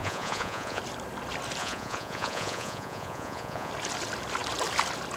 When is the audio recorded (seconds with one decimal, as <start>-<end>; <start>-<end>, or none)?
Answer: 0.8-1.6; 3.7-5.2